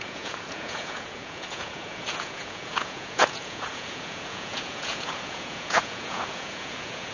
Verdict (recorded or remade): remade